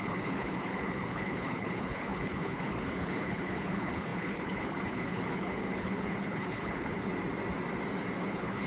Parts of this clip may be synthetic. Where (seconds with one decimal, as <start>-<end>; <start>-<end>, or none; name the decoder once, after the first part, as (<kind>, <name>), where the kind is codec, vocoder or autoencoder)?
0.0-7.1 (codec, HILCodec); 8.2-8.7